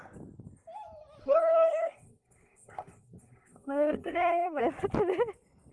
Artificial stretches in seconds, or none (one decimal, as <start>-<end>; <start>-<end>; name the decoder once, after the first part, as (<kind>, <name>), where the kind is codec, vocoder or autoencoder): 1.2-4.6 (codec, SNAC)